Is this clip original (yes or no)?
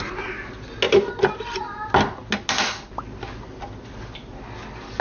yes